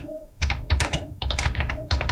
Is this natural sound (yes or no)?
no